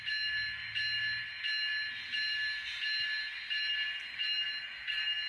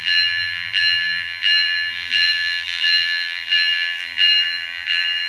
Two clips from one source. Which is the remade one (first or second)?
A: second